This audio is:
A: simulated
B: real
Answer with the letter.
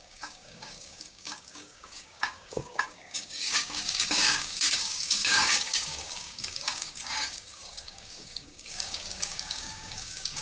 A